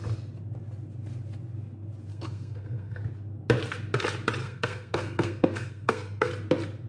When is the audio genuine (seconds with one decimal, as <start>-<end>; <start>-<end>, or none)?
0.0-2.1; 3.0-4.4; 6.3-6.9